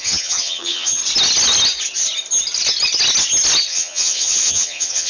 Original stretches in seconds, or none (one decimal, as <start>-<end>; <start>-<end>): 1.0-3.7